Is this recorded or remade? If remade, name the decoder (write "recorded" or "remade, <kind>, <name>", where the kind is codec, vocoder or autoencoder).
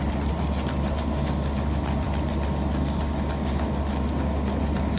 recorded